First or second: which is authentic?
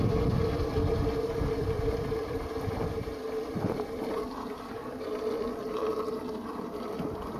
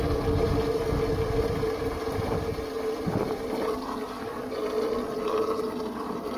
second